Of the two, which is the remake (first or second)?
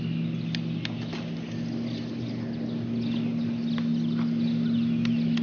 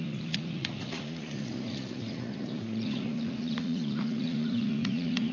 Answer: second